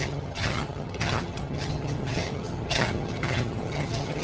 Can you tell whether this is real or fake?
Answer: fake